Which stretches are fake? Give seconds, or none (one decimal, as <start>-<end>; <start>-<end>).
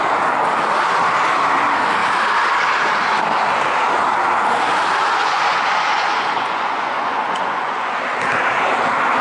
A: 5.2-8.0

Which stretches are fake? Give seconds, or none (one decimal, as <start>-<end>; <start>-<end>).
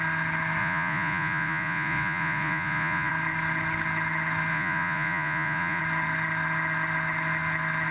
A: 0.6-3.1; 4.5-5.8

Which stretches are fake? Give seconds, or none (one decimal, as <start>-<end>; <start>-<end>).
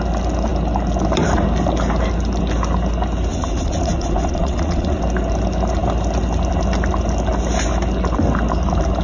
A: 3.3-5.0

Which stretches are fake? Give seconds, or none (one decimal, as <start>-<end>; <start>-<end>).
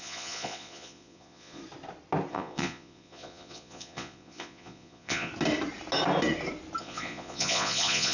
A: 0.0-1.6; 2.3-5.3; 6.8-8.1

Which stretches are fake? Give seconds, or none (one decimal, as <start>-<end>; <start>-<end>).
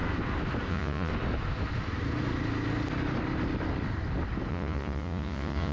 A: 0.7-1.1; 4.5-5.7